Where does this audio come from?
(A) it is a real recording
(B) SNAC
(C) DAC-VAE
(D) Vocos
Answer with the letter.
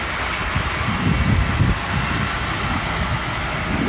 A